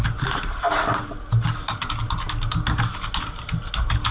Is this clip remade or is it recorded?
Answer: recorded